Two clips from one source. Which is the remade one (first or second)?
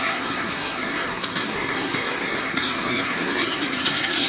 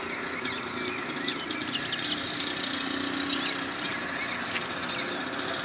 first